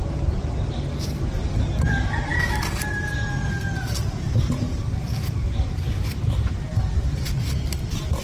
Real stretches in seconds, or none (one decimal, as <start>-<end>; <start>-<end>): 0.0-8.2